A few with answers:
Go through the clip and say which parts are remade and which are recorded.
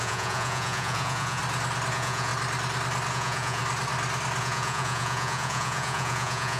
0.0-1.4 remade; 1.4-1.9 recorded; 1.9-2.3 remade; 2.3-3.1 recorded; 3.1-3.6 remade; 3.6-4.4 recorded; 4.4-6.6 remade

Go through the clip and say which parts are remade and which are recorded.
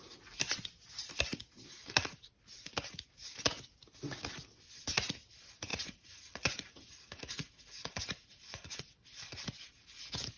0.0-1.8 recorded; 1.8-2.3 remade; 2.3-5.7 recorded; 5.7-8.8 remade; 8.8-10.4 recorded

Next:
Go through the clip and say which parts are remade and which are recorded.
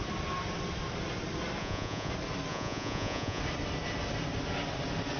0.0-1.6 recorded; 1.6-2.1 remade; 2.1-2.5 recorded; 2.5-3.4 remade; 3.4-5.2 recorded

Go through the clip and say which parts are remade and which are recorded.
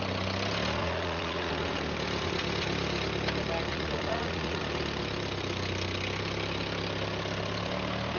0.0-0.8 recorded; 0.8-1.5 remade; 1.5-3.7 recorded; 3.7-4.6 remade; 4.6-8.2 recorded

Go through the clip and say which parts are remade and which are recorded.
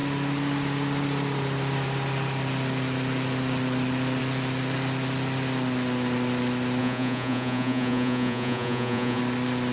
0.0-6.8 recorded; 6.8-9.2 remade; 9.2-9.7 recorded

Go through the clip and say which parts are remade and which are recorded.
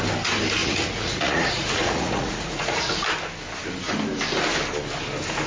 0.0-0.6 recorded; 0.6-2.9 remade; 2.9-5.5 recorded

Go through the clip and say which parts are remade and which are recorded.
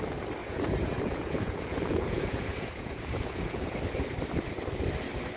0.0-0.4 recorded; 0.4-3.6 remade; 3.6-5.4 recorded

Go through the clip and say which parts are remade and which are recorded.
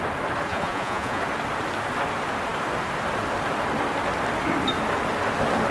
0.0-0.5 recorded; 0.5-1.2 remade; 1.2-5.7 recorded